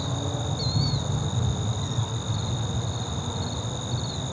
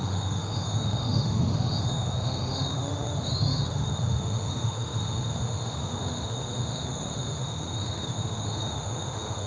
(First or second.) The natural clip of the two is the first